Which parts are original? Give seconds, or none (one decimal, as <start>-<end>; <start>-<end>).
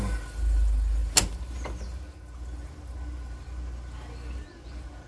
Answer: 0.0-5.1